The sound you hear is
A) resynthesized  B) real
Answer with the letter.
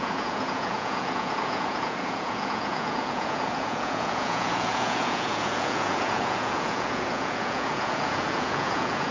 A